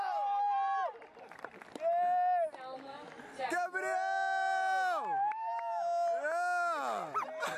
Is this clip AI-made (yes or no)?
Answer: no